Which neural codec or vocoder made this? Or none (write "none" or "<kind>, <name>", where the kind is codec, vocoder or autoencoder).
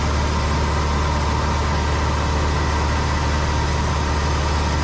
none